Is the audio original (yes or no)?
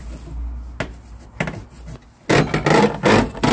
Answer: yes